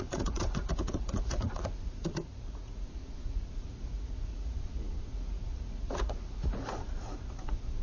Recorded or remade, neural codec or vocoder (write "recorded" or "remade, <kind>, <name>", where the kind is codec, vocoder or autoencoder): remade, vocoder, Vocos